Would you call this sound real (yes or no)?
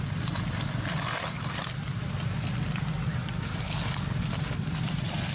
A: yes